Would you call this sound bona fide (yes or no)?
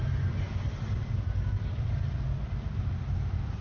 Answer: yes